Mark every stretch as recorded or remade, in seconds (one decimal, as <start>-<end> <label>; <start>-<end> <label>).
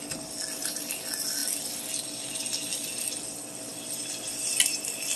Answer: 0.0-5.2 recorded